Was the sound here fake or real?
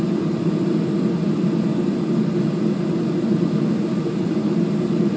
real